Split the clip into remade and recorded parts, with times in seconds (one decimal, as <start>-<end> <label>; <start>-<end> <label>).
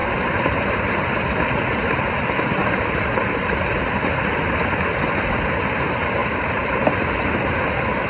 0.0-1.5 remade; 1.5-6.2 recorded; 6.2-6.8 remade; 6.8-8.1 recorded